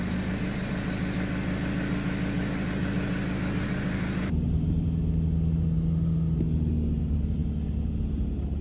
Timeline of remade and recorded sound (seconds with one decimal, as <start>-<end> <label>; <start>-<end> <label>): 0.0-8.6 recorded